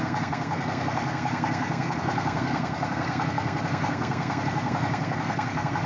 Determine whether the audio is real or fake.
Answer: fake